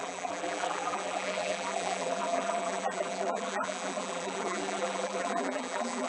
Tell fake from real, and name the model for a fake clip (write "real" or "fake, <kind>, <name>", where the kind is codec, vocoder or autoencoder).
fake, vocoder, BigVGAN v2